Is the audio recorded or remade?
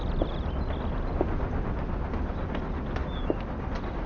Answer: recorded